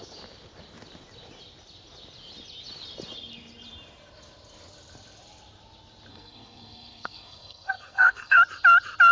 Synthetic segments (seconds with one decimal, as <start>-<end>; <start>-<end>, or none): 6.1-8.4